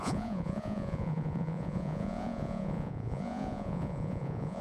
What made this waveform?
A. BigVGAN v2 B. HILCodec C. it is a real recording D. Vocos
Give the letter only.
D